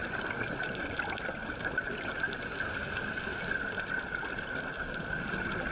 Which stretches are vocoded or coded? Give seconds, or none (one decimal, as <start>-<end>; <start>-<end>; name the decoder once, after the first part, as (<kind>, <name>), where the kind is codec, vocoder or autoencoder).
none